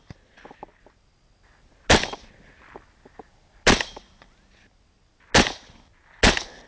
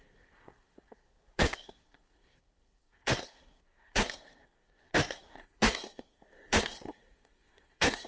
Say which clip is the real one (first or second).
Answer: first